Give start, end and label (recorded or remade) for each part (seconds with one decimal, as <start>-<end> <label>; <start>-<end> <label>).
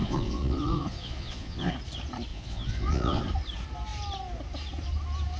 0.0-1.7 remade; 1.7-2.3 recorded; 2.3-3.2 remade; 3.2-5.4 recorded